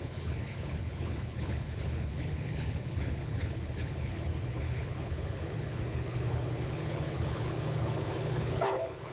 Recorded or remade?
remade